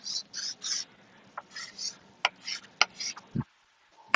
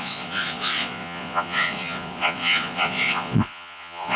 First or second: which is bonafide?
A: first